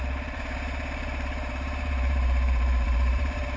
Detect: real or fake fake